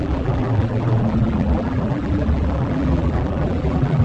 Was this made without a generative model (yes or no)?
no